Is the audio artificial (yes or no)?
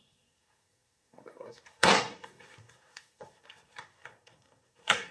yes